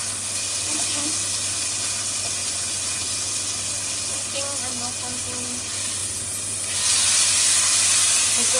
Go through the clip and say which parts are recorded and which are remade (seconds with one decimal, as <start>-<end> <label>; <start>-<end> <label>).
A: 0.0-2.4 recorded; 2.4-3.1 remade; 3.1-8.6 recorded

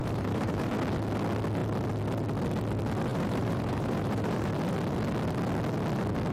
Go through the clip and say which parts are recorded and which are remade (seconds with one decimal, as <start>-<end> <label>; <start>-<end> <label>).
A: 0.0-0.7 remade; 0.7-3.1 recorded; 3.1-4.5 remade; 4.5-6.3 recorded

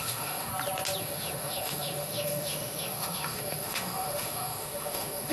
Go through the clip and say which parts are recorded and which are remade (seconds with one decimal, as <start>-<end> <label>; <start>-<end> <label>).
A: 0.0-0.5 remade; 0.5-1.0 recorded; 1.0-5.3 remade

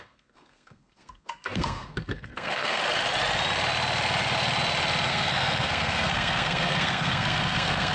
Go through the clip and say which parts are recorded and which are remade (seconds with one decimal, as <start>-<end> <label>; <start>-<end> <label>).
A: 0.0-2.8 remade; 2.8-5.1 recorded; 5.1-7.9 remade